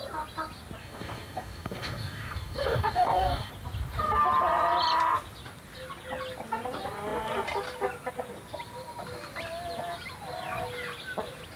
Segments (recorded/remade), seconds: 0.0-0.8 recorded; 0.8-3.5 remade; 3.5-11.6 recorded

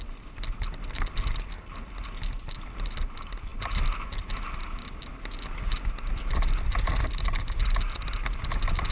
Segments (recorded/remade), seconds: 0.0-8.9 recorded